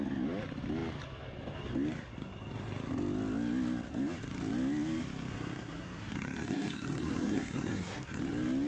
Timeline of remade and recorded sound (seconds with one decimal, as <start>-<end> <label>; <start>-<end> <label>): 0.0-5.3 recorded; 5.3-8.2 remade; 8.2-8.7 recorded